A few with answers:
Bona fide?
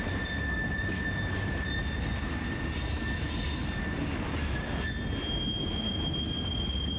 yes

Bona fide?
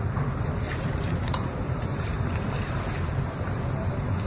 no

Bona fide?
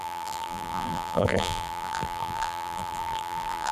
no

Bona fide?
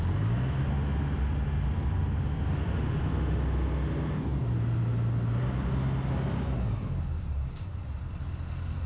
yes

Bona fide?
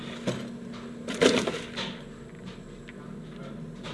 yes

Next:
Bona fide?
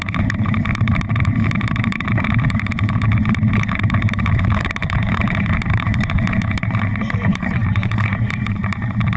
no